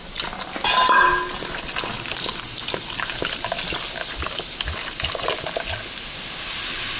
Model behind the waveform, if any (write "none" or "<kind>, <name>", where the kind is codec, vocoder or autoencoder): none